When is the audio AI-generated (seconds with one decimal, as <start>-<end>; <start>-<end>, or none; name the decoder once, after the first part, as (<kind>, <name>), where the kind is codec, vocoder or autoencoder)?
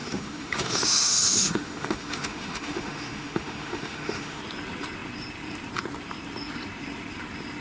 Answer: 0.0-4.4 (autoencoder, DAC-VAE)